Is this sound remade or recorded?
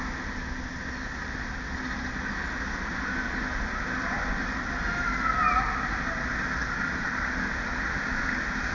recorded